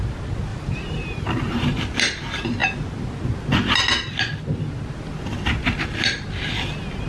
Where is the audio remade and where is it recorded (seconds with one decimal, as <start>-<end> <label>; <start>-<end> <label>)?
0.0-0.5 recorded; 0.5-1.8 remade; 1.8-7.1 recorded